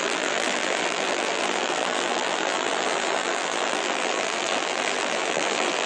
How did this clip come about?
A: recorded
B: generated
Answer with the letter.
B